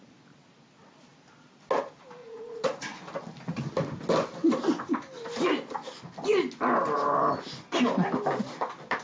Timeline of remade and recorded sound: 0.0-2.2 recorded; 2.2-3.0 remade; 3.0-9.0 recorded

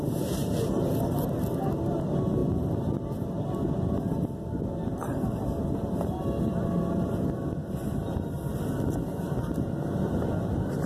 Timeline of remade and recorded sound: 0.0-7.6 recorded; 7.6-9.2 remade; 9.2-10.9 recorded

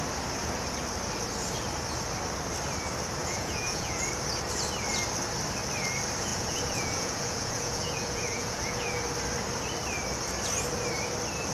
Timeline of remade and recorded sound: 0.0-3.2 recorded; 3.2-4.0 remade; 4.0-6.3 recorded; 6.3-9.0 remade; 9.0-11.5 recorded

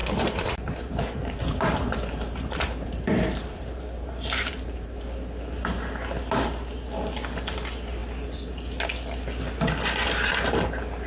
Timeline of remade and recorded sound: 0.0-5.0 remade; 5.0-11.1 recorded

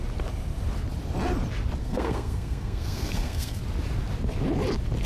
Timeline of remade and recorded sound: 0.0-1.8 recorded; 1.8-3.6 remade; 3.6-5.1 recorded

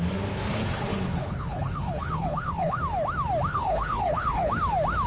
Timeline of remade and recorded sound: 0.0-0.5 recorded; 0.5-2.8 remade; 2.8-3.5 recorded; 3.5-4.5 remade; 4.5-5.1 recorded